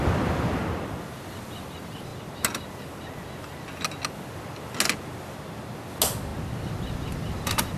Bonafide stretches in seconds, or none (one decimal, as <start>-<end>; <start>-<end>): 0.0-7.8